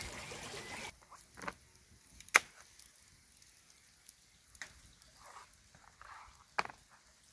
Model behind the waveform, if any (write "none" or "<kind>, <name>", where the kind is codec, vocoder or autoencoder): none